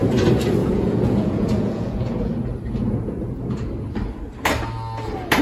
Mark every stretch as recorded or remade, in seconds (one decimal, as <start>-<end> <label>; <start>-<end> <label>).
0.0-0.6 recorded; 0.6-2.3 remade; 2.3-2.8 recorded; 2.8-3.7 remade; 3.7-5.4 recorded